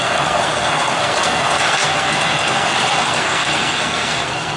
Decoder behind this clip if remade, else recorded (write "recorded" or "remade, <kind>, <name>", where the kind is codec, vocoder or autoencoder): remade, codec, SNAC